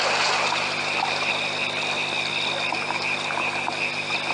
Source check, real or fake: real